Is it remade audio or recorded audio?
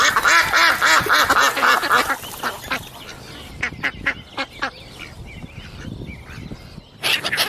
recorded